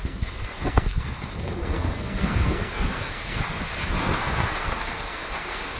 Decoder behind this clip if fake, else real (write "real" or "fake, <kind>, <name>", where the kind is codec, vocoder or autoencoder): fake, codec, SNAC